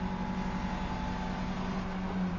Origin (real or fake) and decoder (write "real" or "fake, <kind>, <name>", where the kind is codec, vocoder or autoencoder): real